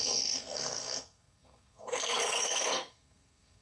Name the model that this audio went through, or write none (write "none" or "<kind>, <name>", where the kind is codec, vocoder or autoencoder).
codec, SNAC